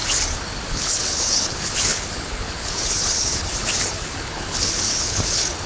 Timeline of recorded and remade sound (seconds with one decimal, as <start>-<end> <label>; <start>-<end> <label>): 0.0-0.7 recorded; 0.7-5.7 remade

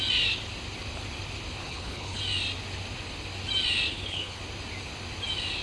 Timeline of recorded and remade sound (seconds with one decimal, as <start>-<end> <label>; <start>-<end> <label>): 0.0-1.6 recorded; 1.6-2.2 remade; 2.2-3.9 recorded; 3.9-4.4 remade; 4.4-5.6 recorded

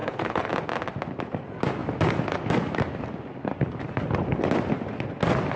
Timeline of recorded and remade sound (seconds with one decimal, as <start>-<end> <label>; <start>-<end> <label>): 0.0-0.5 remade; 0.5-5.6 recorded

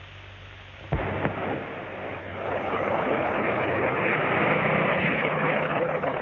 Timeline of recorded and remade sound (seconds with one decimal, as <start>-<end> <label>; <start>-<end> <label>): 0.0-2.2 recorded; 2.2-4.2 remade; 4.2-4.9 recorded; 4.9-6.2 remade

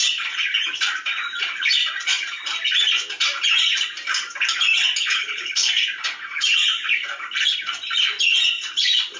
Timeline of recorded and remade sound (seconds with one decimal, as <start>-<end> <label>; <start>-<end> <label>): 0.0-5.2 recorded; 5.2-5.7 remade; 5.7-9.2 recorded

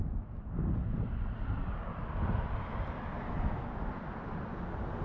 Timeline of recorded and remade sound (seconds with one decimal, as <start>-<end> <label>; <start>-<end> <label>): 0.0-5.0 recorded